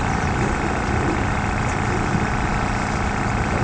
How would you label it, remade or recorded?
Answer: recorded